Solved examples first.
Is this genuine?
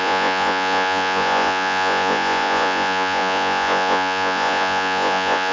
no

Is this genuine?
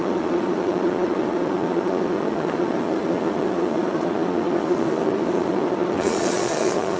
no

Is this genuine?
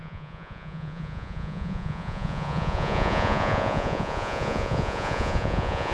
no